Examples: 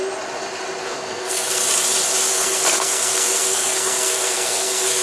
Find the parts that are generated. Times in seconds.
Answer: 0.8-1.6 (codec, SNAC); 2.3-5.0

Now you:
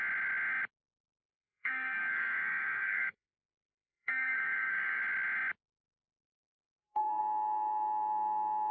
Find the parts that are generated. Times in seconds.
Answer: 1.2-5.0 (codec, SNAC); 6.2-7.2

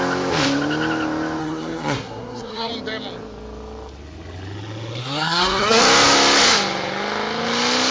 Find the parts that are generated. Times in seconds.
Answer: 1.4-2.7 (codec, SNAC); 5.0-5.8

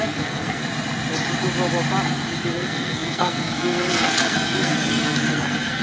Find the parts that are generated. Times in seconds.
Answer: 0.0-0.6 (codec, SNAC); 2.5-5.8

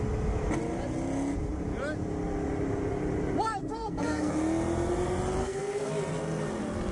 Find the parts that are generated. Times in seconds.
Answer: 3.6-4.3 (codec, SNAC); 5.4-5.9

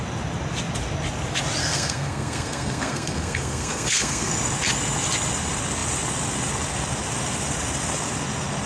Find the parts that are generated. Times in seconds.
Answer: 1.6-4.3 (codec, SNAC)

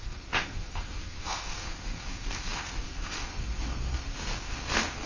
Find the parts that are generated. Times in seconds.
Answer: 0.0-5.1 (codec, SNAC)